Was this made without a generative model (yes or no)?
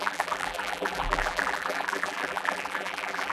no